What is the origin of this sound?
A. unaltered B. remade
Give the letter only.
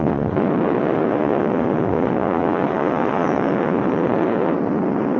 B